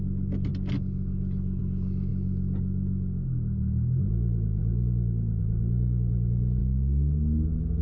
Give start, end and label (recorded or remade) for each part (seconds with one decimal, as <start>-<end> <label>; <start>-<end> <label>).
0.0-7.8 recorded